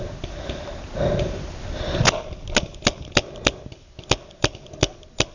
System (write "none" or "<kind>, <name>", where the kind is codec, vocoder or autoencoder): none